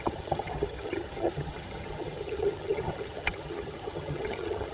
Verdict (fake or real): fake